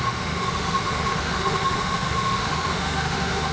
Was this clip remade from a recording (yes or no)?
yes